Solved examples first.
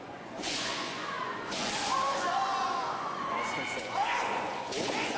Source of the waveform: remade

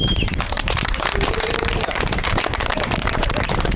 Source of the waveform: remade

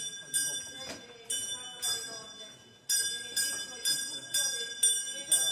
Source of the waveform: recorded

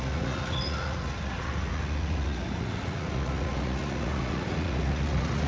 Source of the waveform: remade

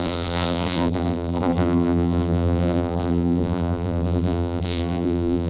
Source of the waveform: remade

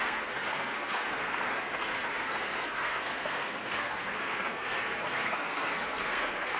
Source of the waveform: remade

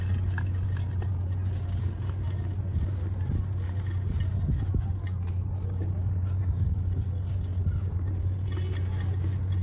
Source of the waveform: recorded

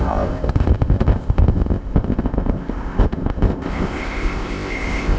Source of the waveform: remade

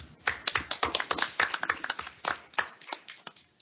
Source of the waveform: recorded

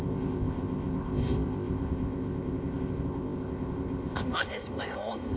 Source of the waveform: remade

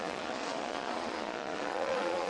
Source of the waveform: remade